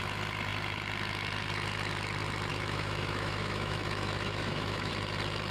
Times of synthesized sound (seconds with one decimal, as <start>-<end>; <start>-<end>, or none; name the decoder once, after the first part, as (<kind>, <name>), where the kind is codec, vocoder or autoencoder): 2.5-4.9 (autoencoder, DAC-VAE)